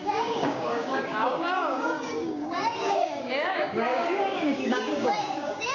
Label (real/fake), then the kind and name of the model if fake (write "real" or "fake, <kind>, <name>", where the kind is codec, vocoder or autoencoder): fake, codec, DAC